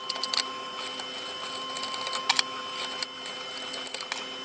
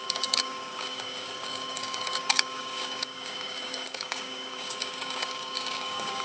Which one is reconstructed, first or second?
second